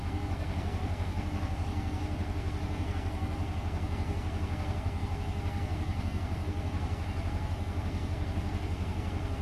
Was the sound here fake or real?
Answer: fake